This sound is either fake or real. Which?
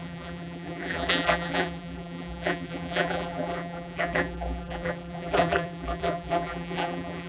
fake